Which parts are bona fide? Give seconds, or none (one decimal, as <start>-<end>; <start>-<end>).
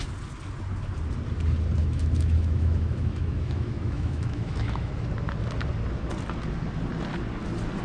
0.0-1.8; 4.9-7.8